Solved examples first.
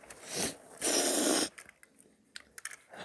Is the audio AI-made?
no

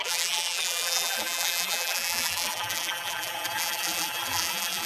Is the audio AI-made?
yes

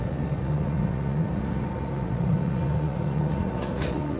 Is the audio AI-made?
yes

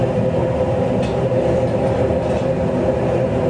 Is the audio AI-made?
no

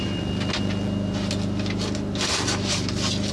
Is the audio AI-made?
no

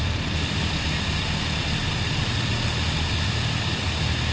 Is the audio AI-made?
no